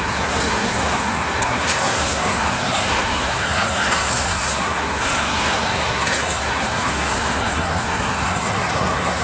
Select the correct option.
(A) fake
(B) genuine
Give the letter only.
A